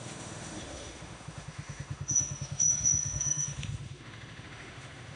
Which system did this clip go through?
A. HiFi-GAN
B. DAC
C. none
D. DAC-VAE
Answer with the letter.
D